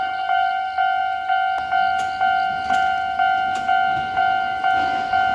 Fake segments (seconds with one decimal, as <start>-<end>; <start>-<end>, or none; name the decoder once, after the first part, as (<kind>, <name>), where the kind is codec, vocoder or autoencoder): none